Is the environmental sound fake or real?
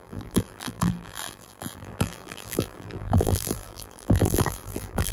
fake